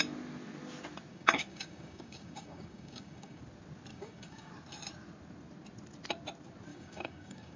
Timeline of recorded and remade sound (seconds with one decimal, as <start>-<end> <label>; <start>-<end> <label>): 0.0-1.1 recorded; 1.1-3.4 remade; 3.4-3.9 recorded; 3.9-4.5 remade; 4.5-6.7 recorded; 6.7-7.6 remade